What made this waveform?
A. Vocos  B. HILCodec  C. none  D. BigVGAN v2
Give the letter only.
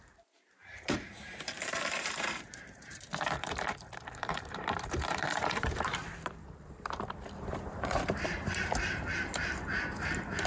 D